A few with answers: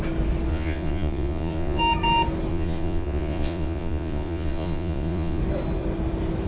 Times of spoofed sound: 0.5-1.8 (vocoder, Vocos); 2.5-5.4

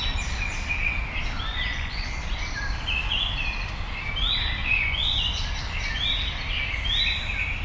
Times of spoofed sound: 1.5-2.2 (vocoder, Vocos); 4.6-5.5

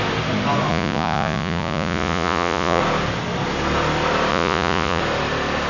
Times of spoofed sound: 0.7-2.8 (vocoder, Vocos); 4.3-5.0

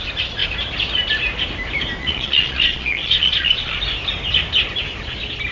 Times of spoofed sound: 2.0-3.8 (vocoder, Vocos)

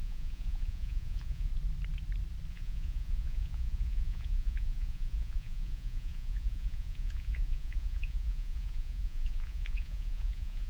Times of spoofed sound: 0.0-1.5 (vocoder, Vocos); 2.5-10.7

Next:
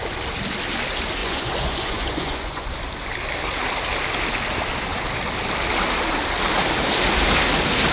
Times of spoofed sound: 1.2-2.7 (vocoder, Vocos)